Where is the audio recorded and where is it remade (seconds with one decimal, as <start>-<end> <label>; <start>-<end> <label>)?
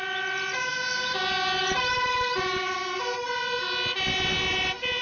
0.0-5.0 recorded